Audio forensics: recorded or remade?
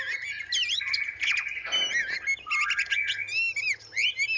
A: recorded